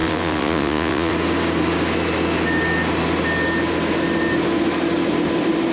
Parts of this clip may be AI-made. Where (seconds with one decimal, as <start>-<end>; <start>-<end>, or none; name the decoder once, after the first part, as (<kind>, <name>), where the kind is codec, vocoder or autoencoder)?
0.0-1.1 (vocoder, WaveNeXt)